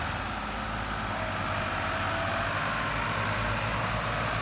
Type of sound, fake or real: real